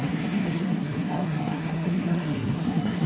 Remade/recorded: remade